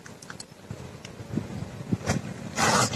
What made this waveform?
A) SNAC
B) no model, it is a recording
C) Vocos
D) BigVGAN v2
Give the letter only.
B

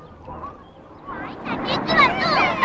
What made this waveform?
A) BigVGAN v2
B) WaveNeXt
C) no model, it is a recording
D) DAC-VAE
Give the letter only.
C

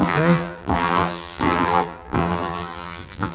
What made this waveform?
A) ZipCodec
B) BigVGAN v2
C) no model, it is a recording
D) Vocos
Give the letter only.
B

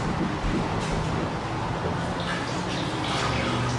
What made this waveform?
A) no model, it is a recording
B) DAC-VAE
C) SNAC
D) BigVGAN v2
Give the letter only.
A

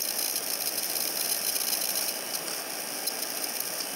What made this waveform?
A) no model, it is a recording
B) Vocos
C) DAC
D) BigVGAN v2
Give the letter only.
D